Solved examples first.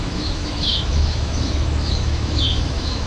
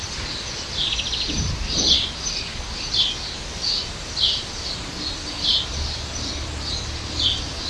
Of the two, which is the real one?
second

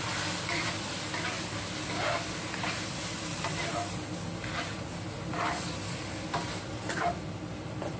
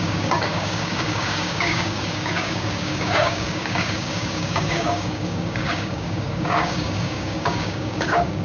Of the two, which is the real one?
first